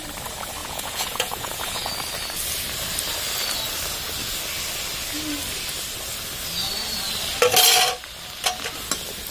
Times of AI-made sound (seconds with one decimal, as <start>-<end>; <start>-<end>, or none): 0.6-1.9

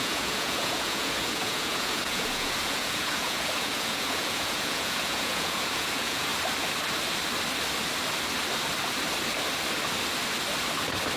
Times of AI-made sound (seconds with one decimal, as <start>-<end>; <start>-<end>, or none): 0.0-6.3

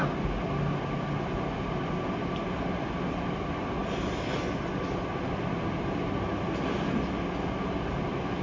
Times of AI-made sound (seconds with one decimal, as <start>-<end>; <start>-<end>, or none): none